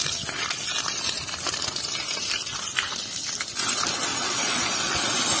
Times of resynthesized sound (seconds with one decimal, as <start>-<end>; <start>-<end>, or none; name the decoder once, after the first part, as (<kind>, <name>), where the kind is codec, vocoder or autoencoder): 4.1-5.0 (vocoder, Vocos)